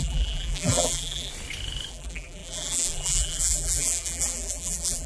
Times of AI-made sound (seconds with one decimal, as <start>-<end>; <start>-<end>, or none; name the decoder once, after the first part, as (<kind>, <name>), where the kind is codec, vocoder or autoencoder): 0.0-1.3 (vocoder, BigVGAN v2); 1.9-5.1